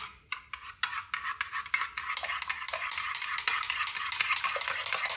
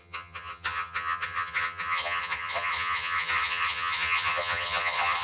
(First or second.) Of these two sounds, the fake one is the second